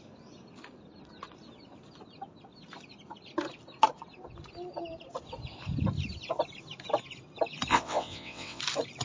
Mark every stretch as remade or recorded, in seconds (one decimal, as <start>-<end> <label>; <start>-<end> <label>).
0.0-7.7 recorded; 7.7-8.6 remade; 8.6-9.0 recorded